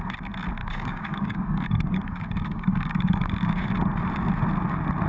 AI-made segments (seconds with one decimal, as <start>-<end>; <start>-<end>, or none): 0.6-3.7